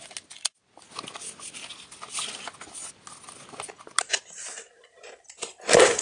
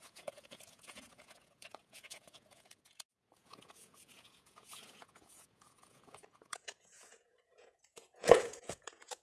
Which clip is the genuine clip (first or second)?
first